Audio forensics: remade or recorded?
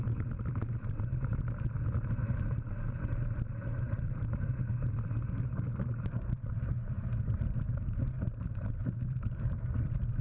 remade